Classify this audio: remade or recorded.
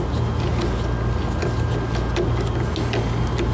recorded